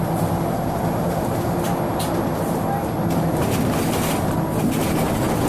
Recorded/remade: recorded